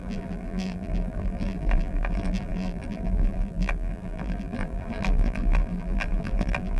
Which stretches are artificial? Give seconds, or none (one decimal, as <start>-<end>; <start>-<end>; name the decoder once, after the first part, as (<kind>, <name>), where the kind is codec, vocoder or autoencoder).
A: 0.0-6.8 (vocoder, BigVGAN v2)

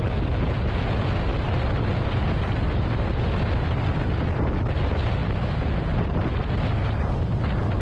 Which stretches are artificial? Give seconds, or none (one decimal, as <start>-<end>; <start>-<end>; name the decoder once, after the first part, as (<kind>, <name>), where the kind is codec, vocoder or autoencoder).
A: none

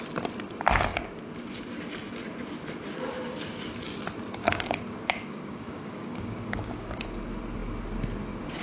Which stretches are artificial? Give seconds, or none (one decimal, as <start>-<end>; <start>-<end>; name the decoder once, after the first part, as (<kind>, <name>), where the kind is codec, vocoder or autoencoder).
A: 4.4-7.0 (codec, DAC)